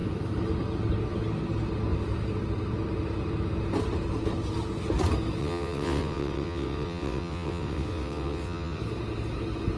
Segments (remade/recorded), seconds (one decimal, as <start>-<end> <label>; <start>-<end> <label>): 0.0-5.4 recorded; 5.4-8.8 remade; 8.8-9.8 recorded